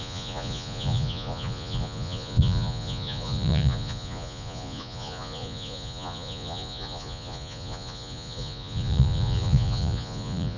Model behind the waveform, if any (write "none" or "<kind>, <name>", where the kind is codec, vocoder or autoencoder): vocoder, Vocos